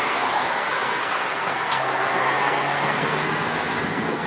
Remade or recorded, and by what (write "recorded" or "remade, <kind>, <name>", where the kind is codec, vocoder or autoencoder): remade, codec, SNAC